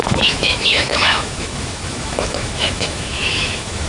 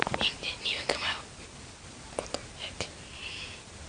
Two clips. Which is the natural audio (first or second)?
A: second